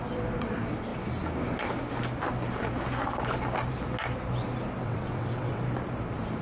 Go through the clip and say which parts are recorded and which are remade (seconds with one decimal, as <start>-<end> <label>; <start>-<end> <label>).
0.0-4.8 recorded; 4.8-5.6 remade; 5.6-6.4 recorded